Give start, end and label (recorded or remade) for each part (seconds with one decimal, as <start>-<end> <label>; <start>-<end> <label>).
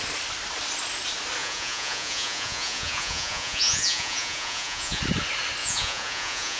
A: 0.0-1.4 recorded; 1.4-5.0 remade; 5.0-5.6 recorded; 5.6-6.6 remade